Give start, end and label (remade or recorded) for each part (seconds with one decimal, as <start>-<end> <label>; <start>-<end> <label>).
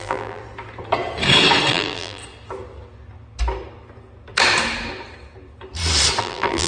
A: 0.0-0.4 remade; 0.4-1.7 recorded; 1.7-2.2 remade; 2.2-6.2 recorded; 6.2-6.7 remade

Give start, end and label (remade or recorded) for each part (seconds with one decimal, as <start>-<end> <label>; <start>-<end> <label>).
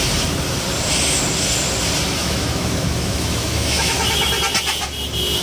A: 0.0-2.2 recorded; 2.2-4.3 remade; 4.3-5.4 recorded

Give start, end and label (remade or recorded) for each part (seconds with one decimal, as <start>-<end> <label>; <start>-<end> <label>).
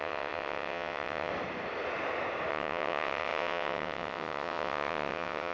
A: 0.0-1.3 remade; 1.3-2.5 recorded; 2.5-5.5 remade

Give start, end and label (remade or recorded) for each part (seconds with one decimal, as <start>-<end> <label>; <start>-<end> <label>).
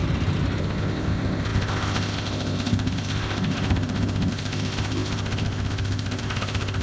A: 0.0-0.6 recorded; 0.6-6.8 remade